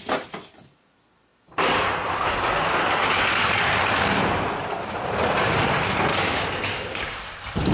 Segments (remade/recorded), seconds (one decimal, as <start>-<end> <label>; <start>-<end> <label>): 0.0-6.1 recorded; 6.1-7.2 remade; 7.2-7.7 recorded